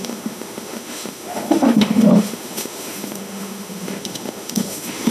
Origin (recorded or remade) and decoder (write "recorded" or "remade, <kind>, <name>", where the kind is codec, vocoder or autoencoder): remade, autoencoder, DAC-VAE